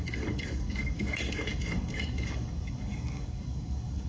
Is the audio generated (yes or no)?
yes